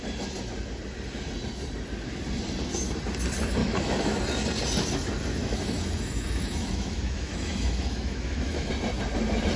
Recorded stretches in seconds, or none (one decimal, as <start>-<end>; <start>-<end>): 0.0-3.6; 4.2-5.4; 8.7-9.6